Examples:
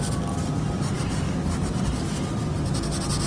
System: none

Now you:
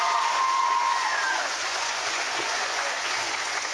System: vocoder, Vocos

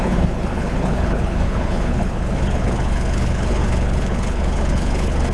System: codec, HILCodec